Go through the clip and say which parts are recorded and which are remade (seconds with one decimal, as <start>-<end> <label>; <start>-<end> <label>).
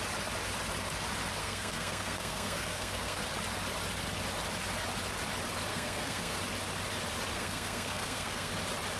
0.0-1.4 recorded; 1.4-3.2 remade; 3.2-5.7 recorded; 5.7-6.4 remade; 6.4-7.3 recorded; 7.3-8.5 remade; 8.5-9.0 recorded